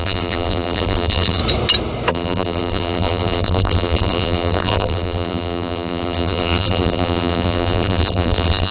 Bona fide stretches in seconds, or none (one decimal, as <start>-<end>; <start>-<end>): 1.4-2.1